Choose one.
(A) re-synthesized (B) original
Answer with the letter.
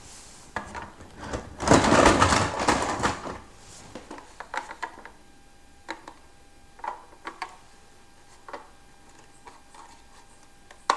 B